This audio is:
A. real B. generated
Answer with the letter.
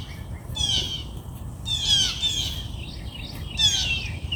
A